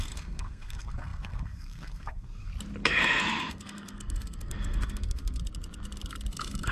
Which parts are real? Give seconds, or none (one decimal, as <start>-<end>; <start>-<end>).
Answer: 2.5-3.0; 5.4-6.3